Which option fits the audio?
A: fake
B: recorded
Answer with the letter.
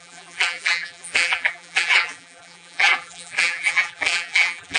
A